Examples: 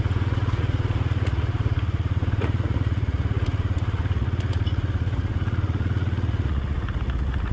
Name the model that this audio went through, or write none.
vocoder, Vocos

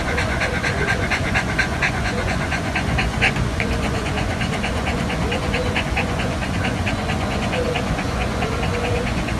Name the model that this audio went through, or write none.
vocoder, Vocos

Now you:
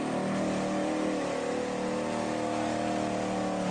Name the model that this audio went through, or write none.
none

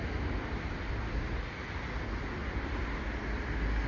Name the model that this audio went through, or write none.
none